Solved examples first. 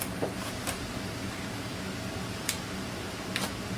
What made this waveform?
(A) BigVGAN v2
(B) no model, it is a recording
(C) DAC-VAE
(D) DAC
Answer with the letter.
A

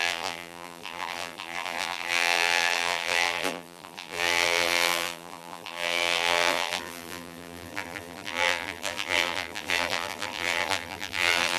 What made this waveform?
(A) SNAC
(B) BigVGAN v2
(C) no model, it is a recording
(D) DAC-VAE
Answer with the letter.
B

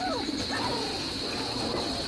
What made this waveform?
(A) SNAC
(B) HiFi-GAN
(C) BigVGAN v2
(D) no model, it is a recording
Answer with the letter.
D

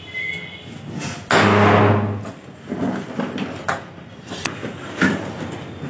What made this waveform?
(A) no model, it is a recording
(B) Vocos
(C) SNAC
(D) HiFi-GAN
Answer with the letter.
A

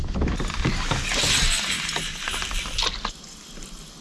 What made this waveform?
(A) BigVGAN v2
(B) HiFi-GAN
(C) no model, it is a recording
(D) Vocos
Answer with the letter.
C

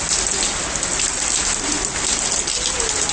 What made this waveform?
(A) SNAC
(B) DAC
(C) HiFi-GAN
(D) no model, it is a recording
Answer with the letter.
D